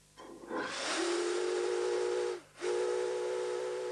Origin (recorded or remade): recorded